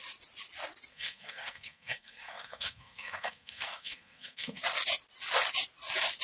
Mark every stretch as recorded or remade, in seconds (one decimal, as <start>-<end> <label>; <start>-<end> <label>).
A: 0.0-0.9 recorded; 0.9-4.6 remade; 4.6-6.2 recorded